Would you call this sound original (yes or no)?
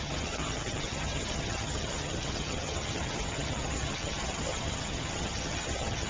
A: no